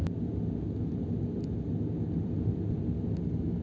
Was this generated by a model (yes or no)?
no